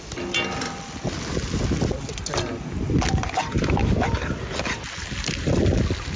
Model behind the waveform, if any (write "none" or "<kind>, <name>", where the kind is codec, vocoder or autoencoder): none